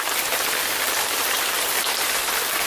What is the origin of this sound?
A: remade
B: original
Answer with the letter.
A